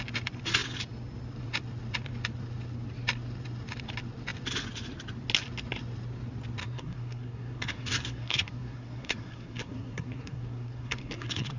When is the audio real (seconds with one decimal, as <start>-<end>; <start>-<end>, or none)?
0.0-6.6